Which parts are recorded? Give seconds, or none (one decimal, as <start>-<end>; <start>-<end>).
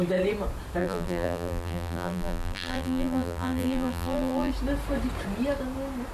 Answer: 0.0-0.8; 4.5-6.1